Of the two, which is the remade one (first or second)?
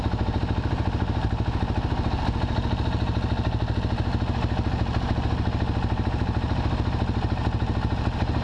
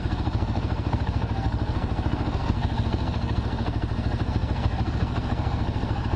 second